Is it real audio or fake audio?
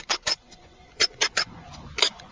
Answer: fake